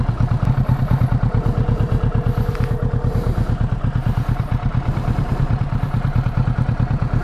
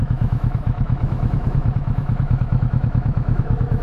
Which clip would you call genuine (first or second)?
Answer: first